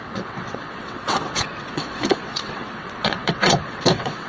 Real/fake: fake